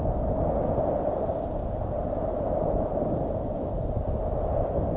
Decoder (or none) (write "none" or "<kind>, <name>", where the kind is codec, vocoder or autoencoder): none